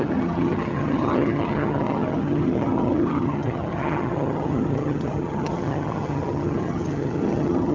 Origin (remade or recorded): remade